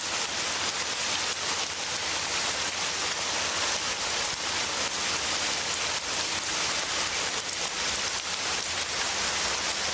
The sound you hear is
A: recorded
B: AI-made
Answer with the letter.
A